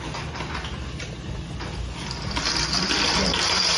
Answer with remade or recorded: recorded